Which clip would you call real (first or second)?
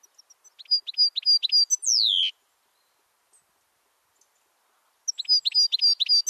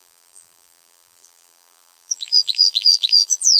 first